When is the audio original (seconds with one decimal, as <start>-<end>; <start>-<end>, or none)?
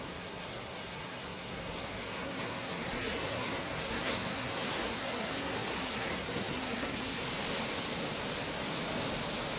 7.2-9.6